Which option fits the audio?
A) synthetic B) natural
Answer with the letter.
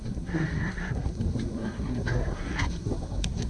A